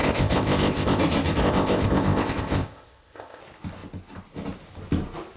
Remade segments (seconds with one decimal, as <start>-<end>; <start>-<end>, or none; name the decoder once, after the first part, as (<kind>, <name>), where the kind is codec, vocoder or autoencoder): 0.0-1.0 (codec, ZipCodec); 1.4-3.4